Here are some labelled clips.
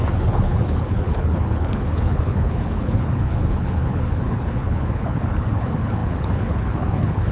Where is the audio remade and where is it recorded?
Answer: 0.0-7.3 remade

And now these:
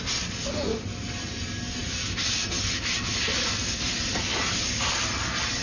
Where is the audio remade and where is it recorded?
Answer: 0.0-5.6 recorded

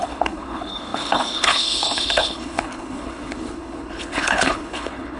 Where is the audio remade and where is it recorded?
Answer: 0.0-5.2 remade

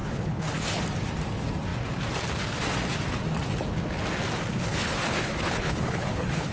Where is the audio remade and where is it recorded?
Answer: 0.0-0.8 remade; 0.8-4.5 recorded; 4.5-6.5 remade

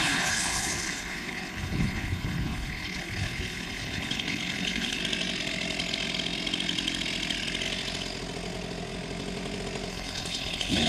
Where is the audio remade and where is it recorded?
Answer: 0.0-5.0 remade; 5.0-9.9 recorded; 9.9-10.9 remade